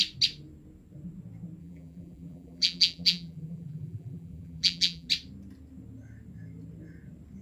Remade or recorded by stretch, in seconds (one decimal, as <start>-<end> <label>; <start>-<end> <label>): 0.0-1.6 recorded; 1.6-5.1 remade; 5.1-7.4 recorded